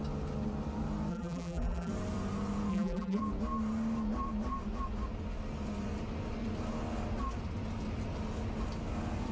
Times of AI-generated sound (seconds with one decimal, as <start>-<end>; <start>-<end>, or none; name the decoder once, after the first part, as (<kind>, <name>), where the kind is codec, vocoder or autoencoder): 1.1-1.9 (vocoder, BigVGAN v2); 2.7-3.2